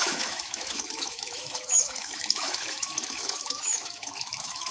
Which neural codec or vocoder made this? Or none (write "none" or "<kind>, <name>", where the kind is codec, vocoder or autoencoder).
autoencoder, DAC-VAE